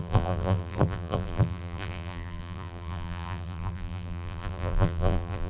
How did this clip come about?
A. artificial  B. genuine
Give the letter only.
A